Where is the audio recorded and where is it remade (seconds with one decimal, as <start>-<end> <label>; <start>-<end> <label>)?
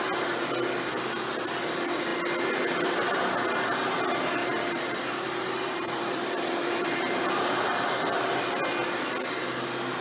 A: 0.0-4.4 recorded; 4.4-8.4 remade; 8.4-10.0 recorded